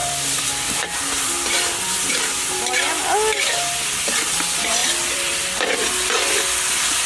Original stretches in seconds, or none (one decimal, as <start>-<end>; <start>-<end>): 2.1-4.8; 5.5-7.1